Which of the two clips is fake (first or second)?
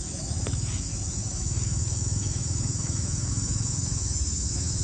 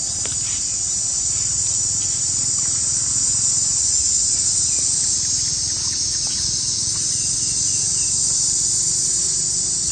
first